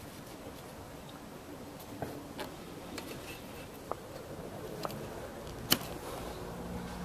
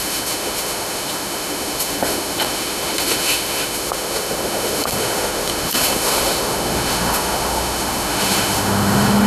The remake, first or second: second